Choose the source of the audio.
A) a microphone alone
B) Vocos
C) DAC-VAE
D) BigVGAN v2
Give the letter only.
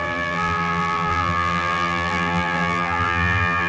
D